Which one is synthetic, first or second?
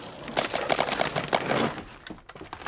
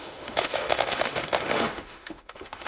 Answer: second